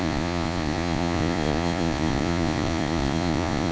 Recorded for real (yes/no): no